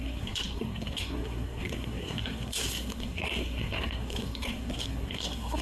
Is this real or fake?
fake